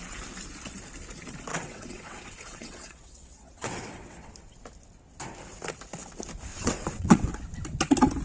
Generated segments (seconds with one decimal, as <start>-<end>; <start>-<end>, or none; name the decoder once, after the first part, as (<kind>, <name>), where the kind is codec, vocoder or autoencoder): 1.5-4.3 (vocoder, WaveNeXt); 6.5-7.3